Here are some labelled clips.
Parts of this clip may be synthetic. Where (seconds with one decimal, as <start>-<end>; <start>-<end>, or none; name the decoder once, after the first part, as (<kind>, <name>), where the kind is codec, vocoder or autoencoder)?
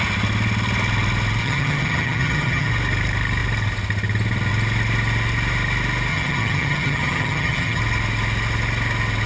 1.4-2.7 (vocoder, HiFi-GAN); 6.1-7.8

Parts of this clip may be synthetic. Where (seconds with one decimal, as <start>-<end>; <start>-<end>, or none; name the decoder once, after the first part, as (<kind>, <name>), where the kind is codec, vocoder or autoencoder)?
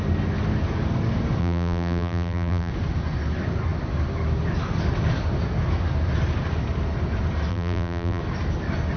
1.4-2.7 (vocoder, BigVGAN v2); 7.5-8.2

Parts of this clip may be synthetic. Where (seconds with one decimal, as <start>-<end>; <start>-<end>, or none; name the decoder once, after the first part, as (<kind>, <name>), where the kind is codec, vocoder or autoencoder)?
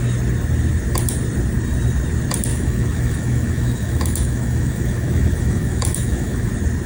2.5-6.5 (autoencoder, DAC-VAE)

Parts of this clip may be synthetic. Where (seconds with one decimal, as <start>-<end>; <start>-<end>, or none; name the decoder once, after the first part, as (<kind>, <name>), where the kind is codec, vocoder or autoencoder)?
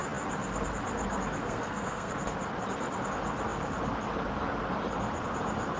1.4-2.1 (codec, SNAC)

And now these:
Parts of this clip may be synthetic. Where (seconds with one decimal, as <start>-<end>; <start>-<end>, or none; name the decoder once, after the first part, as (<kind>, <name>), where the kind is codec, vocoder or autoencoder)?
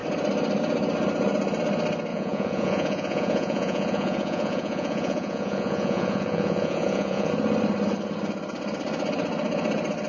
2.1-7.3 (vocoder, Vocos)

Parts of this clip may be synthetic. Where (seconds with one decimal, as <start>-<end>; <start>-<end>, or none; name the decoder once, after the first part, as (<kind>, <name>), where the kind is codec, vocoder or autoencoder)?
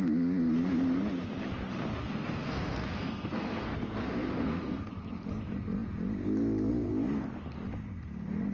1.9-4.9 (codec, SNAC)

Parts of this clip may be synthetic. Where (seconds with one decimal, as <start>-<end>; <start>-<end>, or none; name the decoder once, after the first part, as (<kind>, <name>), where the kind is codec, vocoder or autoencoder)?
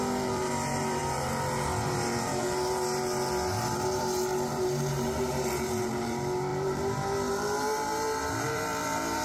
0.0-9.2 (vocoder, BigVGAN v2)